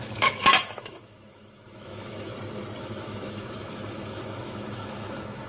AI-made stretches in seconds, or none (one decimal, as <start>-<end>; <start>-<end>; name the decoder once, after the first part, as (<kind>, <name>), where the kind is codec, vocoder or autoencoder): 0.0-2.3 (autoencoder, DAC-VAE); 2.8-5.5